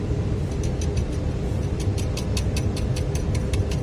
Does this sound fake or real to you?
real